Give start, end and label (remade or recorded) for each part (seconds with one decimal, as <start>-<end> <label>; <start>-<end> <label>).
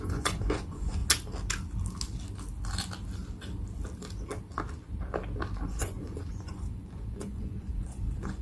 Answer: 0.0-1.0 remade; 1.0-5.7 recorded; 5.7-8.4 remade